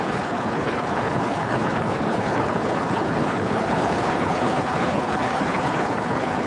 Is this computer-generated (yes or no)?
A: yes